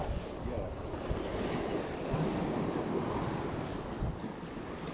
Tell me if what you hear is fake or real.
fake